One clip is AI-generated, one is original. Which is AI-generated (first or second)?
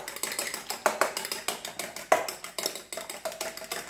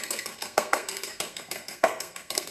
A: second